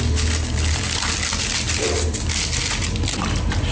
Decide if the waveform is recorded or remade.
recorded